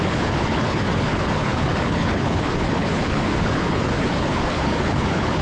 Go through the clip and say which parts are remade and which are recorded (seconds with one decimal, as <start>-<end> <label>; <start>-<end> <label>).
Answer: 0.0-5.4 remade